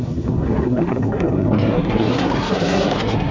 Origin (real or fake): fake